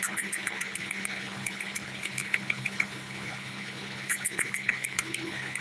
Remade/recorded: remade